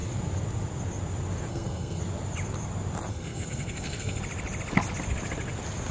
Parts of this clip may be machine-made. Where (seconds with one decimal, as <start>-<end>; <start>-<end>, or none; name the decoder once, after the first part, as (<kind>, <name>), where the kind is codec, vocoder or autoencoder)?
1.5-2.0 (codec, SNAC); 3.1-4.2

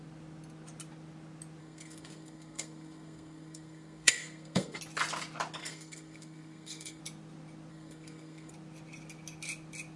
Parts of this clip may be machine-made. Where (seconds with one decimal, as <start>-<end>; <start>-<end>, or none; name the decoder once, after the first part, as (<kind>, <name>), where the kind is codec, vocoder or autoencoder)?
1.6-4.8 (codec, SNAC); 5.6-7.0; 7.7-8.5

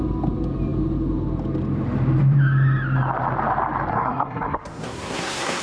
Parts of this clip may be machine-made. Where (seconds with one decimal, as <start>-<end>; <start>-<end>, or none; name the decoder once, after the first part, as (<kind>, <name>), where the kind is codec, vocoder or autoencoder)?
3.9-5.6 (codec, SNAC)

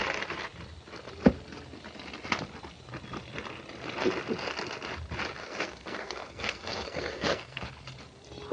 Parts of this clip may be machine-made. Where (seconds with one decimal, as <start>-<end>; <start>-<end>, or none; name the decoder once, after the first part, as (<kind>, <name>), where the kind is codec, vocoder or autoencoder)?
5.4-7.7 (codec, SNAC)

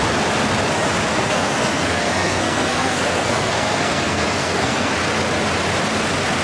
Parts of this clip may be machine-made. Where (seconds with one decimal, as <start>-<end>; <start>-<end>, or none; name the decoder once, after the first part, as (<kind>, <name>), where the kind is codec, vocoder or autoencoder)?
1.1-4.9 (codec, SNAC)